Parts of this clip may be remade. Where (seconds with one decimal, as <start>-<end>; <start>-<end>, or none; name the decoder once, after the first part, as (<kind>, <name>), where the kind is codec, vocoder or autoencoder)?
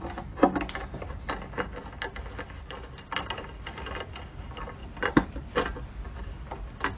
4.8-6.2 (vocoder, BigVGAN v2)